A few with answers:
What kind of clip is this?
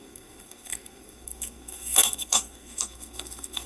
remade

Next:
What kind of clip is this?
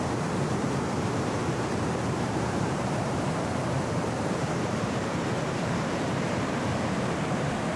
remade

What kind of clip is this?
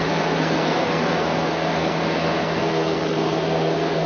remade